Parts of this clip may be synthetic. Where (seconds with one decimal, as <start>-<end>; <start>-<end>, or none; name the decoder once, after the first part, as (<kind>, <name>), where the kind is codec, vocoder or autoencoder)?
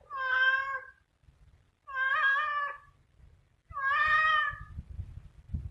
none